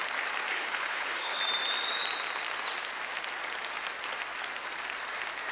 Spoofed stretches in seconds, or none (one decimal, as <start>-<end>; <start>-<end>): 0.5-1.4